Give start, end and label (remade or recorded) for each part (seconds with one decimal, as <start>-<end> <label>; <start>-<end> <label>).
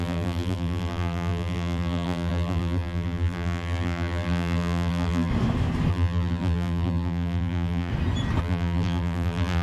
0.0-5.3 remade; 5.3-5.9 recorded; 5.9-7.9 remade; 7.9-8.4 recorded; 8.4-9.6 remade